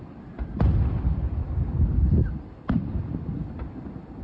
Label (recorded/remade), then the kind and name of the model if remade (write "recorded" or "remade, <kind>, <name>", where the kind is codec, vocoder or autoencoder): recorded